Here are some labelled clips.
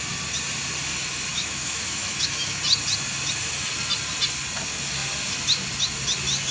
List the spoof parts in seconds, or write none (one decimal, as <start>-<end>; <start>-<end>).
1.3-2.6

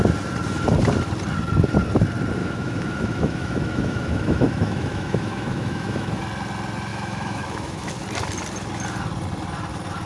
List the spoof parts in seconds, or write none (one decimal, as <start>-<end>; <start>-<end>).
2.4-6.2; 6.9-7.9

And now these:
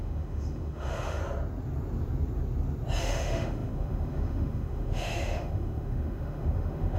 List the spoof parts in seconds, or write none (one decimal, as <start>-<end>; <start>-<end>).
0.0-1.2; 3.0-7.0

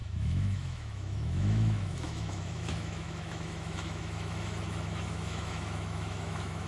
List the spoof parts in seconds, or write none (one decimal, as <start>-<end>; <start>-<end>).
0.0-6.7

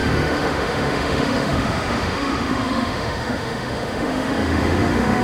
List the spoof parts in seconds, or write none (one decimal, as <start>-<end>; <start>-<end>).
0.0-5.2

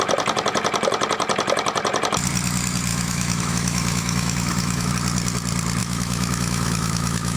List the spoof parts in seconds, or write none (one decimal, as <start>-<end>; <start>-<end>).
2.9-4.9; 5.8-7.4